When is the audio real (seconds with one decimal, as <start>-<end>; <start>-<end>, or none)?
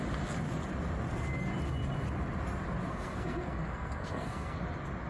0.0-2.9; 4.6-5.1